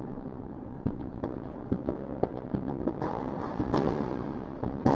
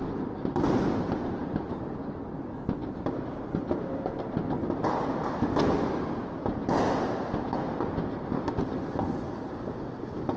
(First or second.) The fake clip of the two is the first